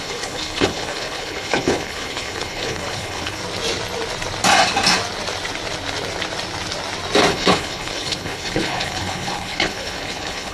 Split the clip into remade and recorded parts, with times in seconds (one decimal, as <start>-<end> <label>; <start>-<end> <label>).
0.0-3.4 remade; 3.4-7.3 recorded; 7.3-10.5 remade